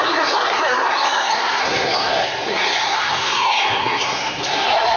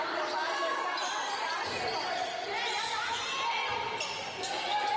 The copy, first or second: first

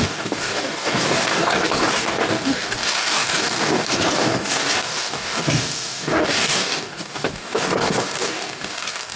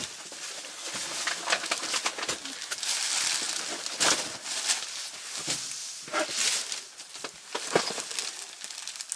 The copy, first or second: first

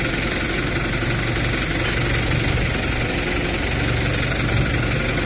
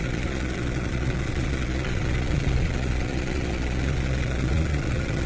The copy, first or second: second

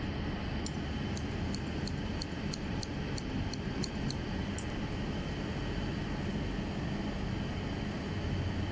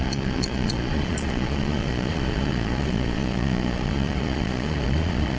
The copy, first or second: second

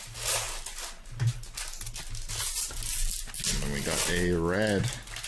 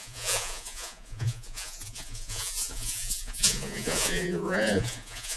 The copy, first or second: second